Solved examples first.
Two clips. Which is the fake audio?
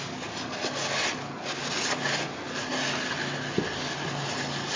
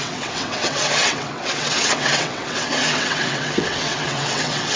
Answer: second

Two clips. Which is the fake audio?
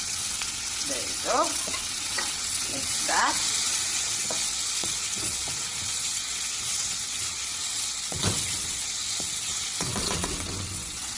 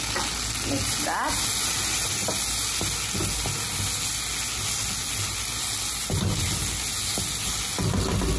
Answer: first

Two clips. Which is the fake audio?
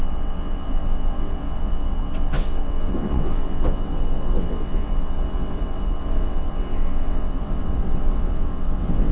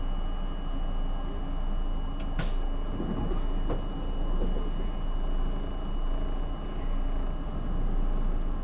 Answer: first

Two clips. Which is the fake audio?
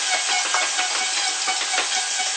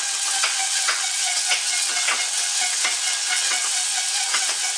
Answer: second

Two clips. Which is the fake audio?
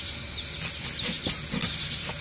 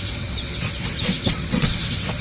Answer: second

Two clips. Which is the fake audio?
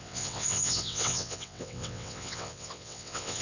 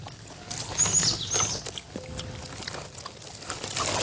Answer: first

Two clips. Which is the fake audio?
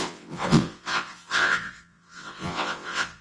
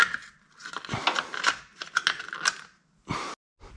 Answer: first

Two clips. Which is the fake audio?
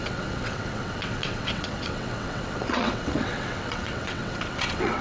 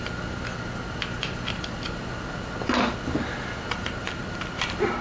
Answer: first